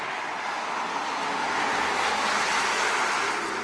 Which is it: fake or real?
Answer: real